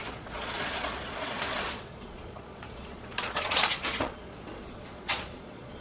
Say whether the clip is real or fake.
fake